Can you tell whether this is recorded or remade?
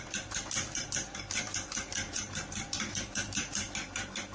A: remade